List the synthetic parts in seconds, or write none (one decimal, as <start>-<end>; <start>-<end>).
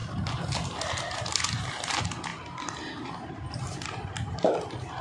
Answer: none